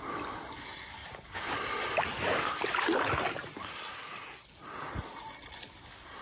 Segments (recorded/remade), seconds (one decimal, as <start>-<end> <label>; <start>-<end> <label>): 0.0-6.2 recorded